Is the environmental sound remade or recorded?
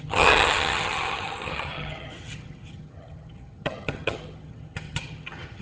remade